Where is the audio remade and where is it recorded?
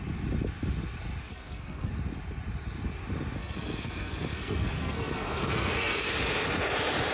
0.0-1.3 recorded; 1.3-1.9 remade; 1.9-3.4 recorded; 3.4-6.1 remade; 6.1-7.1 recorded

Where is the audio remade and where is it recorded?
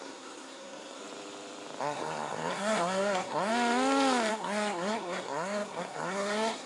0.0-1.0 remade; 1.0-1.8 recorded; 1.8-3.5 remade; 3.5-4.3 recorded; 4.3-6.7 remade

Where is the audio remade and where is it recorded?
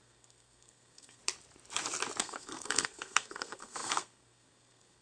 0.0-1.2 remade; 1.2-2.2 recorded; 2.2-5.0 remade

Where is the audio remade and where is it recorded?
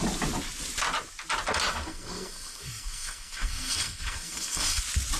0.0-1.7 recorded; 1.7-4.8 remade; 4.8-5.2 recorded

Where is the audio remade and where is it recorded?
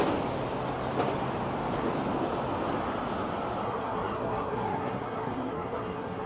0.0-3.6 recorded; 3.6-6.3 remade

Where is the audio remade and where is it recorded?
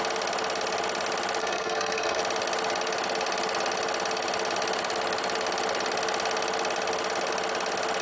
0.0-1.4 recorded; 1.4-2.2 remade; 2.2-8.0 recorded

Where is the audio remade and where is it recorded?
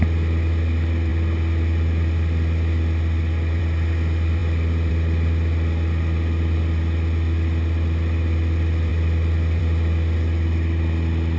0.0-11.4 recorded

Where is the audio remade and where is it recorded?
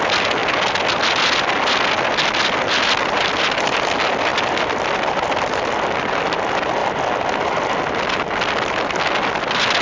0.0-9.8 recorded